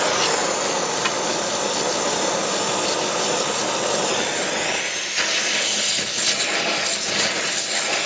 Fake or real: real